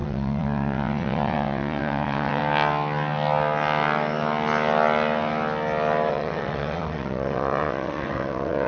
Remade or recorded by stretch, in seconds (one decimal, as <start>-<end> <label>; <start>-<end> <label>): 0.0-2.4 remade; 2.4-6.1 recorded; 6.1-8.7 remade